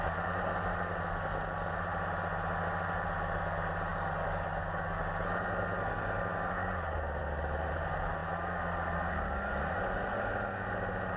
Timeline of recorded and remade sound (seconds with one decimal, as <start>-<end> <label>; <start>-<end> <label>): 0.0-3.9 recorded; 3.9-5.0 remade; 5.0-11.2 recorded